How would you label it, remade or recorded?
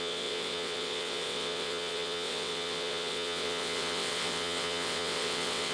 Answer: remade